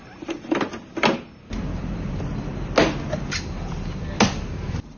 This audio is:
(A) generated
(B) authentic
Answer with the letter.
B